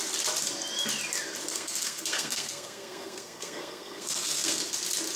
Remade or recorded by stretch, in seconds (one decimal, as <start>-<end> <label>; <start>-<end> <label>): 0.0-1.5 recorded; 1.5-4.6 remade; 4.6-5.2 recorded